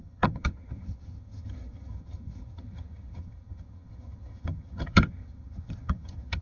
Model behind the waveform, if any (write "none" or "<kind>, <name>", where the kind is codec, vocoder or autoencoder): vocoder, HiFi-GAN